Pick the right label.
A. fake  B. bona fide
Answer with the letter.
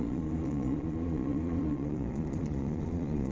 A